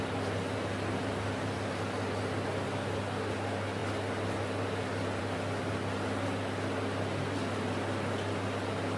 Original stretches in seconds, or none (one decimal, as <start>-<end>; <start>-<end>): 0.0-9.0